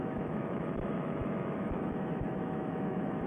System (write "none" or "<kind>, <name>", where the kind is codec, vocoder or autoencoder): autoencoder, DAC-VAE